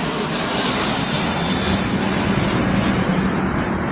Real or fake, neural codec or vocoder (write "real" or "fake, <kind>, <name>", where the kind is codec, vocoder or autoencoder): real